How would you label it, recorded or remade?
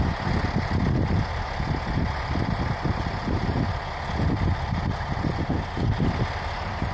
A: recorded